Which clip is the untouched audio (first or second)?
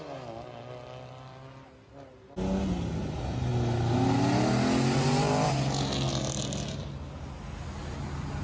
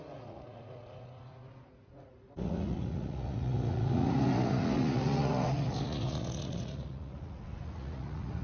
first